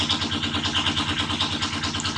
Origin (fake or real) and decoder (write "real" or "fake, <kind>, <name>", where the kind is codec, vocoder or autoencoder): real